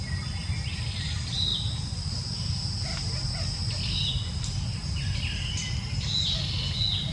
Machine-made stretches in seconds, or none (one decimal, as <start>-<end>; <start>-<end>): none